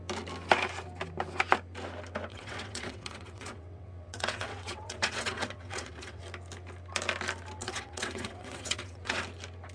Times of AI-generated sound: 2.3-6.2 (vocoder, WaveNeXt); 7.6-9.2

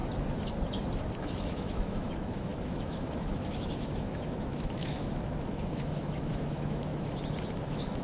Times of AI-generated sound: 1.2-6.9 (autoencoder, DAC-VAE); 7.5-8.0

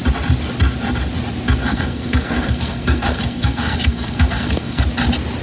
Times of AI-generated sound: 1.6-4.8 (codec, SNAC)